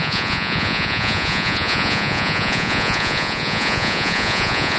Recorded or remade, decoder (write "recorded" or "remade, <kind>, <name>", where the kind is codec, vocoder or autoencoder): remade, vocoder, Vocos